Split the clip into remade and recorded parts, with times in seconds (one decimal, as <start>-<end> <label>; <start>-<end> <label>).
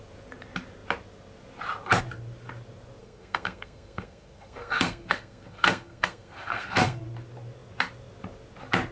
0.0-3.0 recorded; 3.0-7.0 remade; 7.0-8.9 recorded